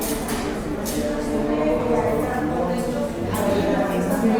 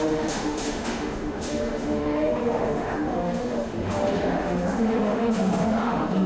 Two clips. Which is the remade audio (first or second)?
second